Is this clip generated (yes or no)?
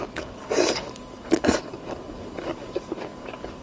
yes